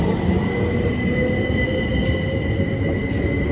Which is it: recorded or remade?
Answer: recorded